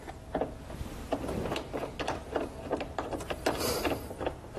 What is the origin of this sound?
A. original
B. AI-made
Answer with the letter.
A